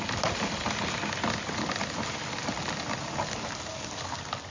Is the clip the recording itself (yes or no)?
yes